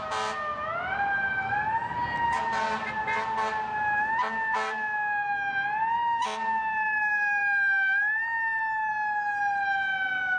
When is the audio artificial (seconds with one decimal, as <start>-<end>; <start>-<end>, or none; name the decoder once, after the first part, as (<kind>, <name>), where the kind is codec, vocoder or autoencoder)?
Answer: none